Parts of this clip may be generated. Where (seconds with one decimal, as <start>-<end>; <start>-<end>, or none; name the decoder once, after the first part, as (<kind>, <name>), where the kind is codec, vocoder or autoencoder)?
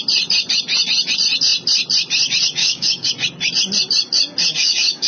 2.6-3.1 (codec, DAC); 4.6-5.1